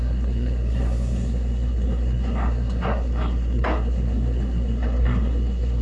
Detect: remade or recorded remade